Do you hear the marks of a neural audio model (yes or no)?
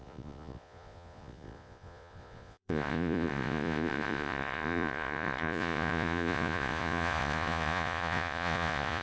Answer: yes